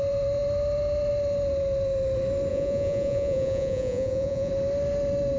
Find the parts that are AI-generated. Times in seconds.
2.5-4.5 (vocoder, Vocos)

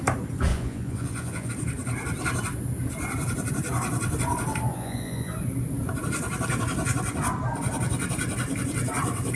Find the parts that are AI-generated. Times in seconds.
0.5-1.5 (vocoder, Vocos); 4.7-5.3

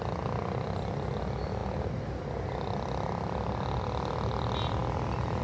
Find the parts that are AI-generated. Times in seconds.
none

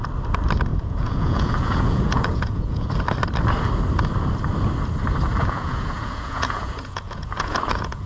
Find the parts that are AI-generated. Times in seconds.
0.7-2.9 (vocoder, Vocos); 5.4-8.1

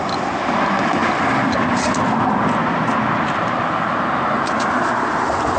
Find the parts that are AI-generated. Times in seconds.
none

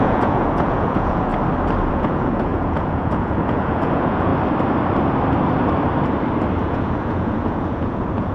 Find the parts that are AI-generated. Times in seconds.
0.0-1.3 (vocoder, Vocos); 1.9-4.3; 6.7-8.3